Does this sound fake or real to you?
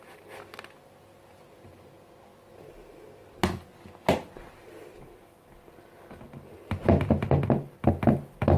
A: real